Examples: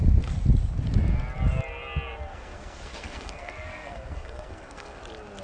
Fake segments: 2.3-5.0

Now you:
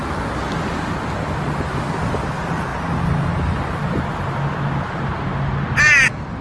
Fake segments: none

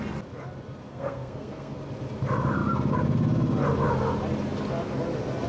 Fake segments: 0.9-1.8

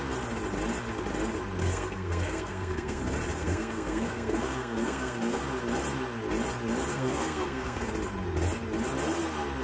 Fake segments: 1.6-3.0; 3.4-5.4; 6.9-7.9

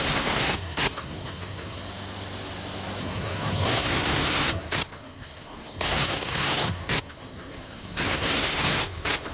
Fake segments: 0.0-1.8; 3.0-9.3

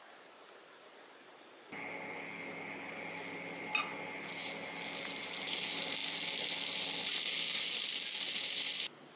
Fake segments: none